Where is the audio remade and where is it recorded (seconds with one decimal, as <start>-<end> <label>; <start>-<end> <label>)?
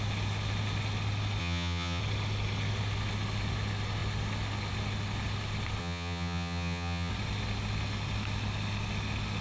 0.0-1.4 recorded; 1.4-2.0 remade; 2.0-5.8 recorded; 5.8-7.1 remade; 7.1-9.4 recorded